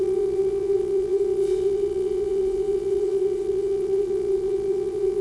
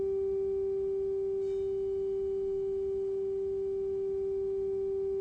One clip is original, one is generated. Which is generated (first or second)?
first